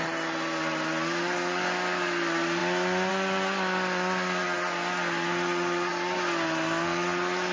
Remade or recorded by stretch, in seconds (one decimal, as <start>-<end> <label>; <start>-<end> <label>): 0.0-7.5 recorded